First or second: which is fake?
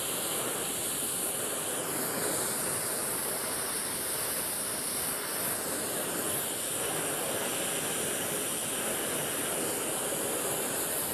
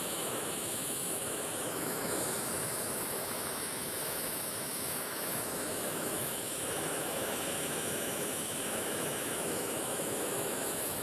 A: second